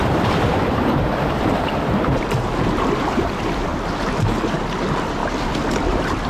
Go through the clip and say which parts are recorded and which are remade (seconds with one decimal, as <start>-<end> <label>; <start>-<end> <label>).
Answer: 0.0-3.7 remade; 3.7-4.4 recorded; 4.4-6.3 remade